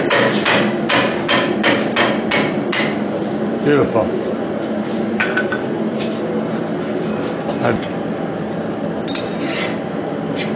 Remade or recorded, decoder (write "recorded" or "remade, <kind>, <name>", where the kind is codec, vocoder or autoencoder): recorded